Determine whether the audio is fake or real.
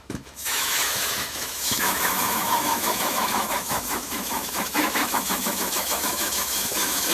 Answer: fake